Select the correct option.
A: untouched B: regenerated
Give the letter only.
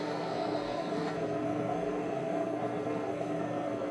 B